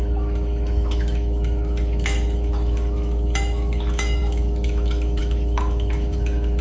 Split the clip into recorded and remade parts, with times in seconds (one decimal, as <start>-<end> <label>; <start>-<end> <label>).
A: 0.0-6.6 remade